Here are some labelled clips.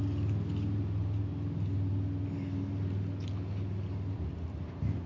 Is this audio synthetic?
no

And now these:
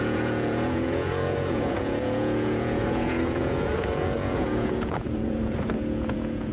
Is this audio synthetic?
yes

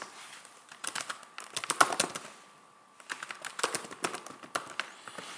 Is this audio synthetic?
no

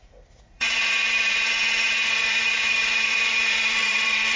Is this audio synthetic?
yes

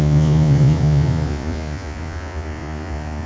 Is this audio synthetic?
yes